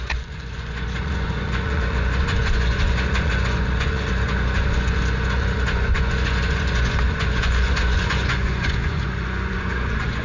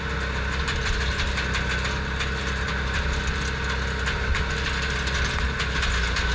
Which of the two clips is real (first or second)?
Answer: second